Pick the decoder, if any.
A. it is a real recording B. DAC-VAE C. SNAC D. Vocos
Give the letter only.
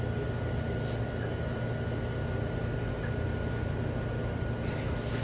A